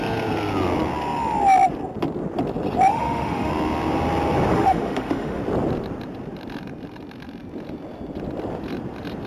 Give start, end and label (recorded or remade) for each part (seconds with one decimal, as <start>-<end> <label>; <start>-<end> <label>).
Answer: 0.0-2.9 recorded; 2.9-3.5 remade; 3.5-4.5 recorded; 4.5-5.4 remade; 5.4-9.3 recorded

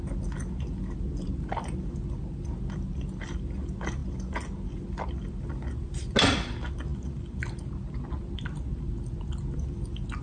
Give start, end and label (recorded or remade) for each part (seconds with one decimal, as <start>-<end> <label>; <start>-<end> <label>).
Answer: 0.0-10.2 recorded

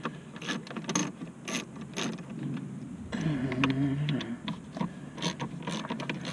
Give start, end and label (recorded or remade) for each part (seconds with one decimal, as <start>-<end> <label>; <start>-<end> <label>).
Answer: 0.0-6.3 recorded